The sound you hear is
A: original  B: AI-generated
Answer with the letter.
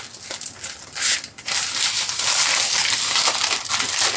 A